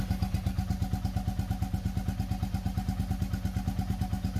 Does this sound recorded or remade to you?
recorded